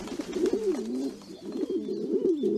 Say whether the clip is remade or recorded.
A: recorded